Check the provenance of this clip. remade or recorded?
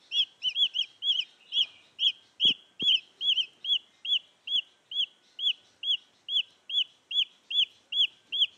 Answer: recorded